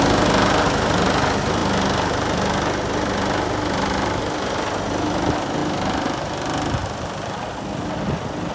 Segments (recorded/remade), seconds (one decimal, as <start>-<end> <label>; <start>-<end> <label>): 0.0-8.5 recorded